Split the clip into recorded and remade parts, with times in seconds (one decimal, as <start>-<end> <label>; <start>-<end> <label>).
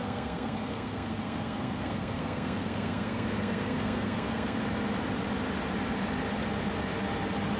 0.0-4.6 remade; 4.6-7.6 recorded